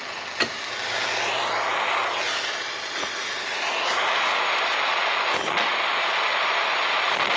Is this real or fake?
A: real